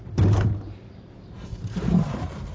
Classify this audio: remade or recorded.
remade